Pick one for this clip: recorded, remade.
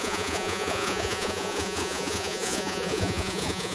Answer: remade